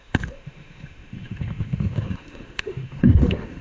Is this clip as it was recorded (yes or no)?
no